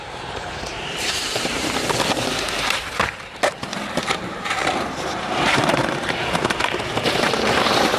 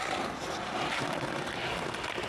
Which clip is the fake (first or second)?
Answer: first